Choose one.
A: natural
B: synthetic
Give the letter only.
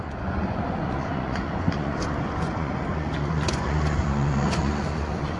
B